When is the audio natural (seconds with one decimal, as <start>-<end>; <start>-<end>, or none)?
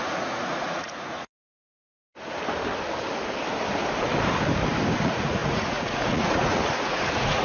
1.7-5.0